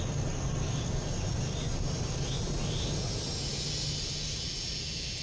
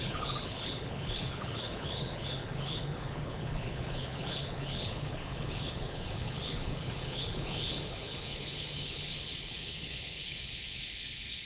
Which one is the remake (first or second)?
second